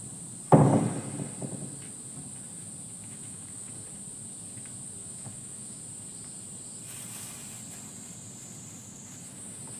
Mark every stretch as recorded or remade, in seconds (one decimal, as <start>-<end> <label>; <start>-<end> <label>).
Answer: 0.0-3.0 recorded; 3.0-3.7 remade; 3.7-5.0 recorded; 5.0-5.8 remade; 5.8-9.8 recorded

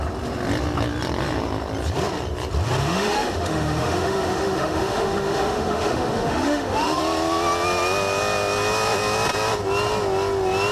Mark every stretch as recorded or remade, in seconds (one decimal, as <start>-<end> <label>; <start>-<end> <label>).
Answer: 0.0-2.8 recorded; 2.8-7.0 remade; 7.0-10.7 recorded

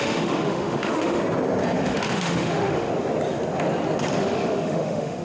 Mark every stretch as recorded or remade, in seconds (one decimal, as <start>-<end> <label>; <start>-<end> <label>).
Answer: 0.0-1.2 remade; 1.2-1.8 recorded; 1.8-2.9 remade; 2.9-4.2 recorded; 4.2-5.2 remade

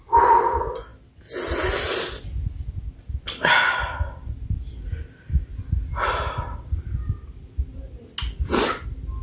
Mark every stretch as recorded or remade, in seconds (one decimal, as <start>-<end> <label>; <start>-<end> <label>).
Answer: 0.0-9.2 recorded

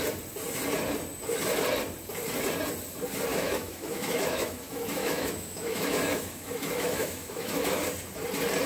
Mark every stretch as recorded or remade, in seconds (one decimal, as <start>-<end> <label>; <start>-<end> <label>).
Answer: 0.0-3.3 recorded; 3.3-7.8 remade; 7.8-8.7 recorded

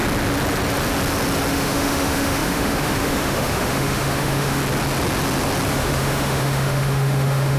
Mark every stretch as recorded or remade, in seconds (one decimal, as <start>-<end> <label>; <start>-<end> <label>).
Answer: 0.0-1.5 recorded; 1.5-4.6 remade; 4.6-5.7 recorded; 5.7-7.6 remade